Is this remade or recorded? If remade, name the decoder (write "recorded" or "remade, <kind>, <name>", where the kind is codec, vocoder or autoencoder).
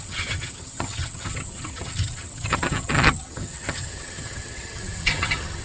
remade, vocoder, HiFi-GAN